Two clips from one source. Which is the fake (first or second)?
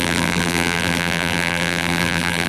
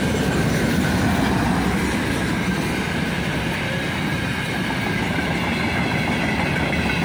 first